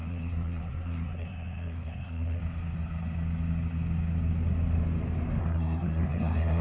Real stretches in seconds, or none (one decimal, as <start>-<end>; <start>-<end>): 2.4-5.4